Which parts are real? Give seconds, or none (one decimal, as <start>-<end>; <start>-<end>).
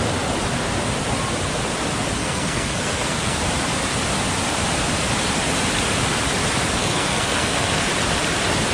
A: 0.0-2.2; 3.4-6.8; 7.9-8.7